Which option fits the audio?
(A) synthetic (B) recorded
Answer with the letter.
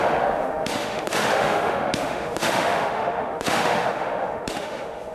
A